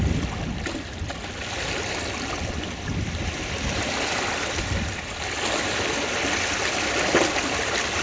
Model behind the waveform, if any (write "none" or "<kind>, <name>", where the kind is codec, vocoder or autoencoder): none